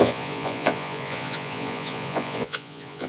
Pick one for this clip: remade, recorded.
remade